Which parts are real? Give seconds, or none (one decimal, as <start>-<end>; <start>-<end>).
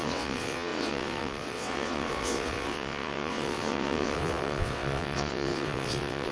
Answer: none